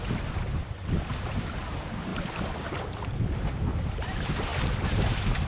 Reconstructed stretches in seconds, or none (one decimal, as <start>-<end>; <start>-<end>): 0.0-2.1; 2.7-5.5